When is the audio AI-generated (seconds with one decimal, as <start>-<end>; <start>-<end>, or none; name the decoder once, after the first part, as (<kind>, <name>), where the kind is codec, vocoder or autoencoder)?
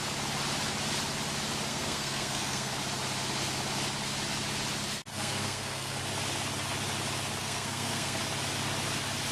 1.7-2.8 (codec, SNAC); 5.1-6.0; 7.4-8.2